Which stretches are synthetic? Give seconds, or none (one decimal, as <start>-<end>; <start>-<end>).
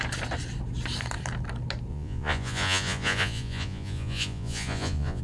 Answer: 1.9-5.2